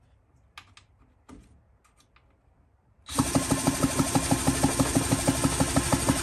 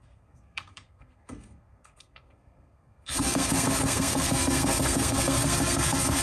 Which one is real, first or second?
first